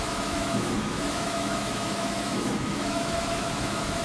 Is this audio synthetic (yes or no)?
yes